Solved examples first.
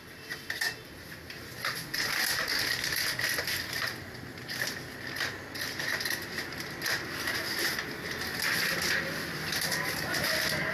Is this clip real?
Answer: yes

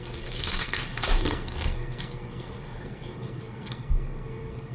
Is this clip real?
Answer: no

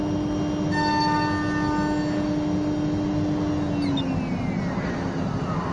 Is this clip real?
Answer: yes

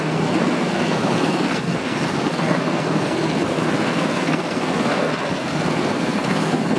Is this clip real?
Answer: no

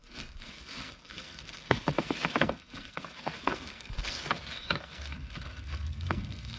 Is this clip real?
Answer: no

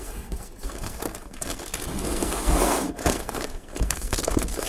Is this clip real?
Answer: no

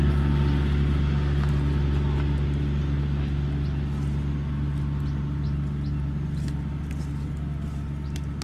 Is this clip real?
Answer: yes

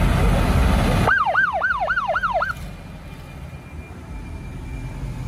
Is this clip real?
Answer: yes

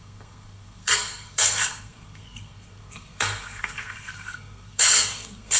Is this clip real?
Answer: no